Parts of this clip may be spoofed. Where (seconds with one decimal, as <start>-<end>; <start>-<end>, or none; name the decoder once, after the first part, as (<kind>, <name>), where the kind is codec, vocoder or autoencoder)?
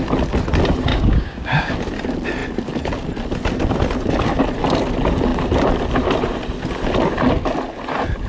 0.9-1.7 (codec, DAC)